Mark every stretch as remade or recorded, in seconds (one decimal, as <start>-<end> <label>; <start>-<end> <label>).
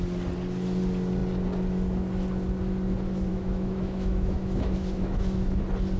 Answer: 0.0-3.3 recorded; 3.3-5.6 remade; 5.6-6.0 recorded